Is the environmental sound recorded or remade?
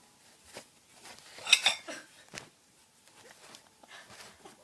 recorded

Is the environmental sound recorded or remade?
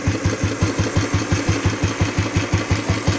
recorded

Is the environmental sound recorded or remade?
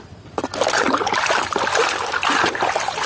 recorded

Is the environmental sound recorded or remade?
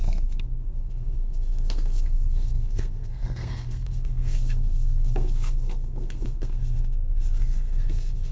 remade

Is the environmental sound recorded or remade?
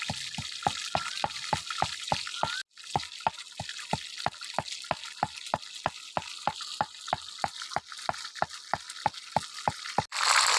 recorded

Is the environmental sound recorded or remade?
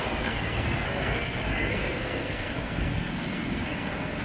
remade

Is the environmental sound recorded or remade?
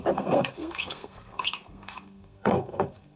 remade